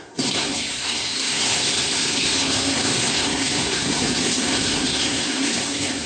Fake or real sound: fake